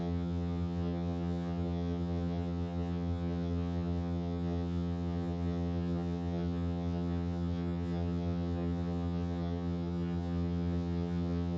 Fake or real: fake